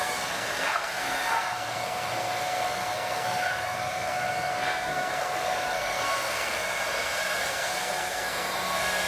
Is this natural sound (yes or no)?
no